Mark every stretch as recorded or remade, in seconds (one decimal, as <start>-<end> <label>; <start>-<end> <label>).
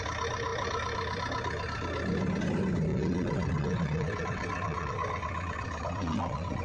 0.0-2.9 recorded; 2.9-6.6 remade